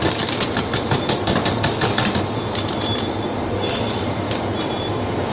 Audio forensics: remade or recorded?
recorded